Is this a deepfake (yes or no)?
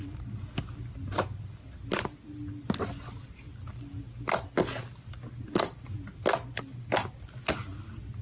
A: no